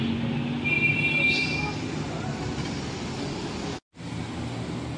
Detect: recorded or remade recorded